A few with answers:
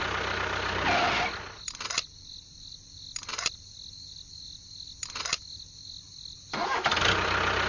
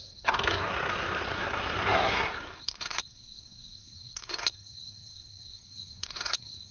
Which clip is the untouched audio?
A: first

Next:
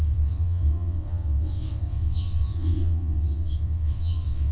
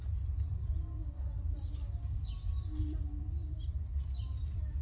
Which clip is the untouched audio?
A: second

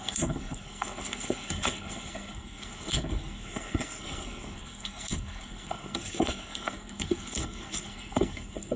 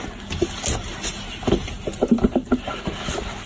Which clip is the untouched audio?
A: second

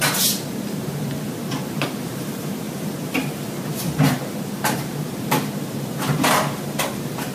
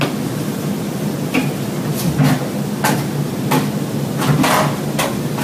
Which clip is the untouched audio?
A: second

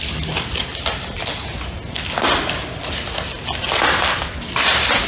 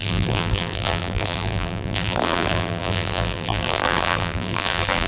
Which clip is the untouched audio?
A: first